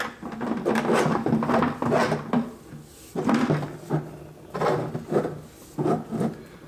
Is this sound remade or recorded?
recorded